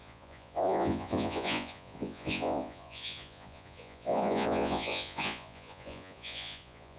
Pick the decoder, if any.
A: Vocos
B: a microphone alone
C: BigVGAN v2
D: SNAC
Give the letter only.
A